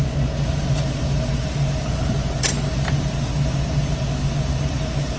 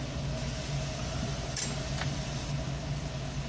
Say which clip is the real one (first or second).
second